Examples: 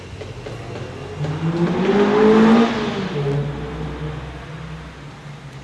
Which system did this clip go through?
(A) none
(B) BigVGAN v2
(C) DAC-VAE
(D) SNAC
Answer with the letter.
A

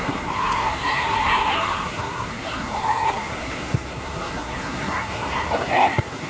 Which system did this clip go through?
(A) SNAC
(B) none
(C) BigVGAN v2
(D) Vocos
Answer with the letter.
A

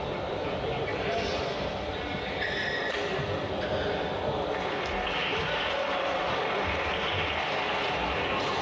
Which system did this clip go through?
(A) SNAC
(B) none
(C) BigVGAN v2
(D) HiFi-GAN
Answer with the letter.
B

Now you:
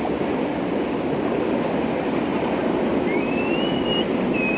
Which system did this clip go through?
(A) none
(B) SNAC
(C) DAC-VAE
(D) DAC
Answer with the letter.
A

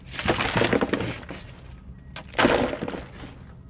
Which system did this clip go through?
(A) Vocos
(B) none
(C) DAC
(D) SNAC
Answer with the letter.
B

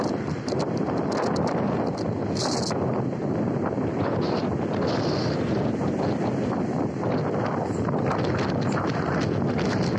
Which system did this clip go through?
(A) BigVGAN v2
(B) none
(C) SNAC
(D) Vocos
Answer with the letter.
B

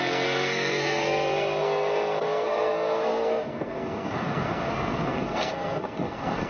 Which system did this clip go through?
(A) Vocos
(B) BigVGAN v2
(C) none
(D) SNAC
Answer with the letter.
D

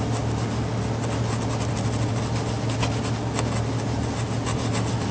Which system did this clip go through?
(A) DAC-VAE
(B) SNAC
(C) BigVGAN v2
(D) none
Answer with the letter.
D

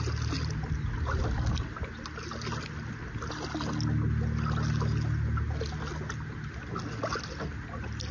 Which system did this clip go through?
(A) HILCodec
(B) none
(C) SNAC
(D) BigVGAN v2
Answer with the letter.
B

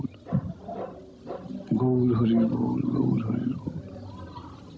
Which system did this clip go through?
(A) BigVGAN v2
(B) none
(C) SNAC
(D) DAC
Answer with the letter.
B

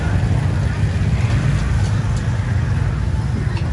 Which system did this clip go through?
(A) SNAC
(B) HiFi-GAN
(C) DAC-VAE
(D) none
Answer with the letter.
D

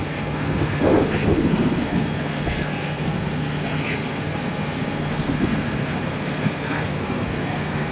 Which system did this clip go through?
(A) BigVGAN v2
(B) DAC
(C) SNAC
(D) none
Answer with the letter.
C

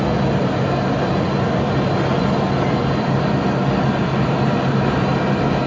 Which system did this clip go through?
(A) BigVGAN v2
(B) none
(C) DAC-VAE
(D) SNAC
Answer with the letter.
B